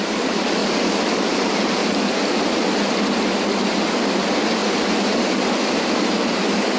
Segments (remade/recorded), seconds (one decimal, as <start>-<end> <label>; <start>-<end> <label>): 0.0-0.6 remade; 0.6-1.1 recorded; 1.1-1.8 remade; 1.8-4.1 recorded; 4.1-6.8 remade